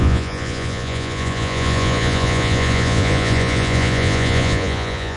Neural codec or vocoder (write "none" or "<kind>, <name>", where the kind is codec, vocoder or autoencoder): vocoder, Vocos